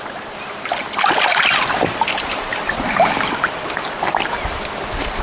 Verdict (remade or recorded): recorded